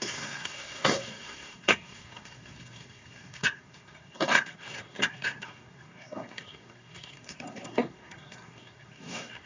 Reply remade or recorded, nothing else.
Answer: remade